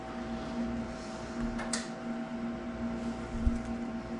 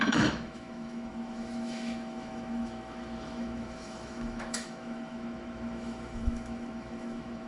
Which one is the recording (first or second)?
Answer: first